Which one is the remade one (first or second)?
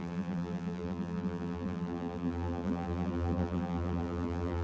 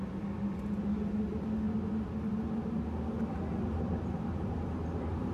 first